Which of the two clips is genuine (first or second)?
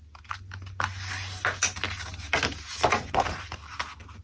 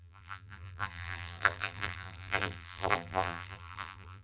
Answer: first